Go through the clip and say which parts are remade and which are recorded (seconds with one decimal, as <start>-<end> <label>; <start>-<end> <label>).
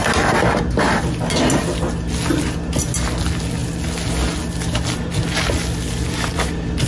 0.0-6.9 recorded